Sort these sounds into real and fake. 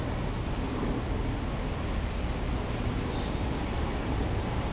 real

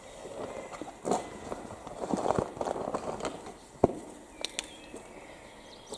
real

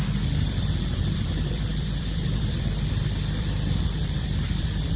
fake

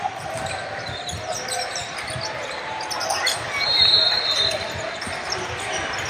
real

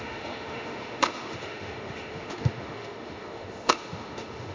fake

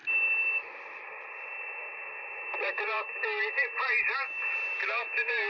real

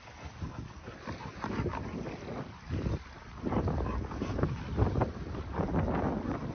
real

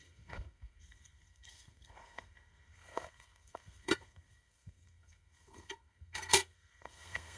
fake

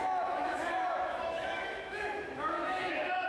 fake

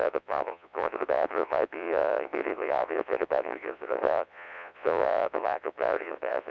fake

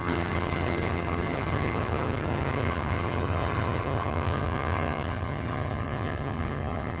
fake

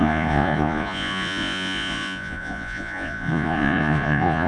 fake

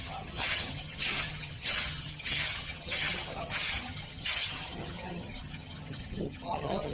fake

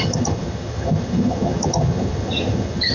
fake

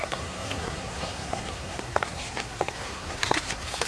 fake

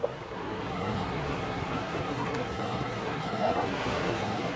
fake